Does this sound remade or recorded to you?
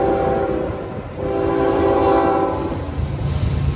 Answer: recorded